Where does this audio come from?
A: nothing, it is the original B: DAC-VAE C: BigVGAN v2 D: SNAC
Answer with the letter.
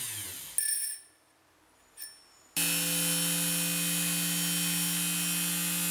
A